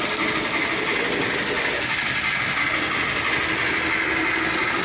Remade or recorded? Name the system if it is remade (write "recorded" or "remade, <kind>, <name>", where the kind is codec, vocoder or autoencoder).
recorded